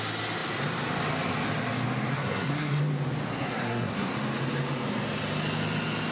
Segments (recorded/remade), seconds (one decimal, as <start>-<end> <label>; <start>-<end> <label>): 0.0-2.1 recorded; 2.1-2.8 remade; 2.8-3.3 recorded; 3.3-4.1 remade; 4.1-6.1 recorded